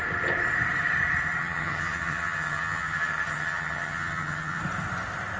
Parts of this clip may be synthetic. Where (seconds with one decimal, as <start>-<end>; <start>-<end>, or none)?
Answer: 1.4-4.6